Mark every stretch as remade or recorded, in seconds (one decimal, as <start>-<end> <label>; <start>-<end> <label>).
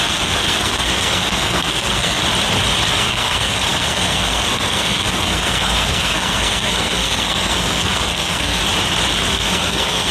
0.0-2.2 remade; 2.2-2.9 recorded; 2.9-8.6 remade; 8.6-9.3 recorded; 9.3-10.1 remade